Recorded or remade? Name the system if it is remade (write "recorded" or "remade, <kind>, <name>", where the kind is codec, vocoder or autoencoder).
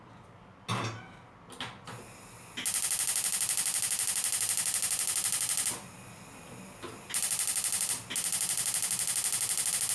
recorded